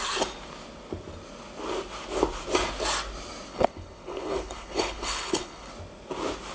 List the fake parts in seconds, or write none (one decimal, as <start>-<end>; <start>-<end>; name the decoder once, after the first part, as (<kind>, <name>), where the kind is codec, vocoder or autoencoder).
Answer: 3.5-5.7 (codec, HILCodec)